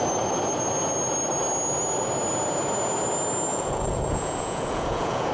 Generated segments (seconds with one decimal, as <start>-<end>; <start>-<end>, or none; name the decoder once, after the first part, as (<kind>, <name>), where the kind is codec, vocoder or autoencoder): 3.5-5.3 (vocoder, Vocos)